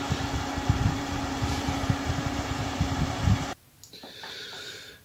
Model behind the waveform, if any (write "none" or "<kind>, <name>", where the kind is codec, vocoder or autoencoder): vocoder, BigVGAN v2